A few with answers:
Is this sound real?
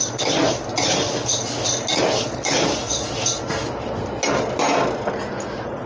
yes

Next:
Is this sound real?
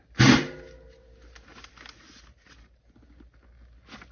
yes